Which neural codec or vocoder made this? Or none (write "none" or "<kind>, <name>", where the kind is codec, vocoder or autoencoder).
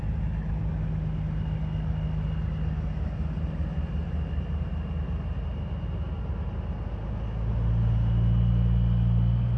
none